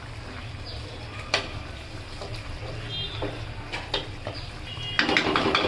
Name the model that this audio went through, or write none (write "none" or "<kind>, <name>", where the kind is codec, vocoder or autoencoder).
none